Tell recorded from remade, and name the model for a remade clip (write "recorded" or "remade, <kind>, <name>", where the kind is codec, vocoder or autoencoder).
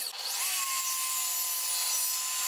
recorded